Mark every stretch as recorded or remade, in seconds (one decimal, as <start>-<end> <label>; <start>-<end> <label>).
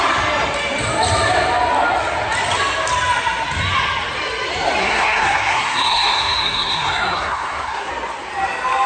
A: 0.0-4.8 recorded; 4.8-7.9 remade; 7.9-8.9 recorded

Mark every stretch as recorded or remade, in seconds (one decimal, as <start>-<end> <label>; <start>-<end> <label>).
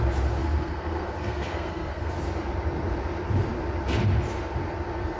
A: 0.0-0.4 recorded; 0.4-2.1 remade; 2.1-5.2 recorded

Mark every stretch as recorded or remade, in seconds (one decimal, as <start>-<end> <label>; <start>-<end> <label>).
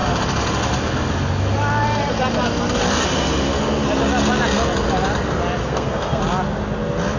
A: 0.0-5.6 recorded; 5.6-6.2 remade; 6.2-7.2 recorded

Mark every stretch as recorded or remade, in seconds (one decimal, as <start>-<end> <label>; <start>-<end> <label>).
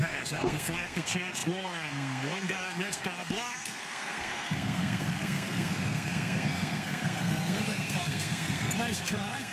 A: 0.0-9.5 remade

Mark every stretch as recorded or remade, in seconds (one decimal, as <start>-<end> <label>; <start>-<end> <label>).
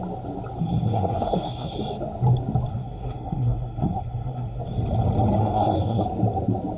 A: 0.0-0.6 recorded; 0.6-1.8 remade; 1.8-2.7 recorded; 2.7-4.6 remade; 4.6-5.4 recorded; 5.4-6.0 remade; 6.0-6.8 recorded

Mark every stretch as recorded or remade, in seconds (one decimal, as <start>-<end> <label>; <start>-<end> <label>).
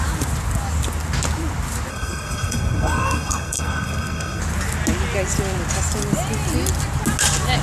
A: 0.0-1.9 recorded; 1.9-4.4 remade; 4.4-7.6 recorded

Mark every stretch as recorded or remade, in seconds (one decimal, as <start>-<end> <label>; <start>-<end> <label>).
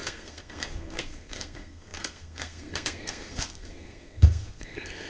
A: 0.0-5.1 remade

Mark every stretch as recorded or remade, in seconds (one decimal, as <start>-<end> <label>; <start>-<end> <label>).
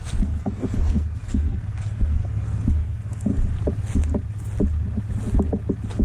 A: 0.0-3.3 remade; 3.3-6.0 recorded